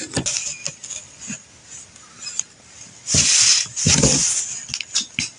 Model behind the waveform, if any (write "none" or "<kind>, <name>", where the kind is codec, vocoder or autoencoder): none